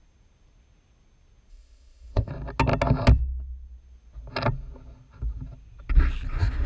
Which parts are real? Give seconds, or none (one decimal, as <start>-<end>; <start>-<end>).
0.0-1.5; 2.3-6.7